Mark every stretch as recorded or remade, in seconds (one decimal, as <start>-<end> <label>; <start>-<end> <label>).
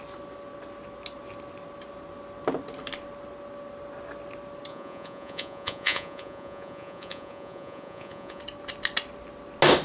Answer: 0.0-4.7 recorded; 4.7-8.4 remade; 8.4-9.8 recorded